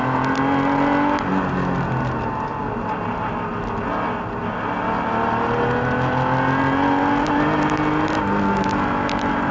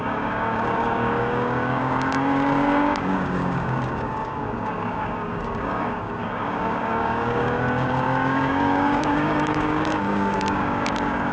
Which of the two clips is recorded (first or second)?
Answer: first